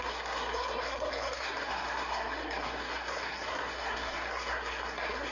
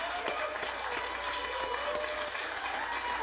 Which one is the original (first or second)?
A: second